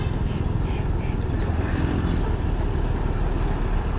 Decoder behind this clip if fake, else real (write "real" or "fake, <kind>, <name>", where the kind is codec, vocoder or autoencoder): real